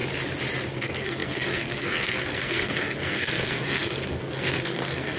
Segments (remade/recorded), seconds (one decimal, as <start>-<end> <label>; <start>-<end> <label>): 0.0-0.7 recorded; 0.7-5.2 remade